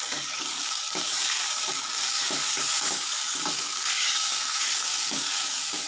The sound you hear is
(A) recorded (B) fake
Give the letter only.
B